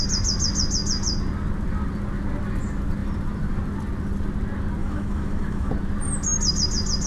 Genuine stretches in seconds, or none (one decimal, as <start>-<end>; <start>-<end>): 0.0-4.8; 5.7-7.1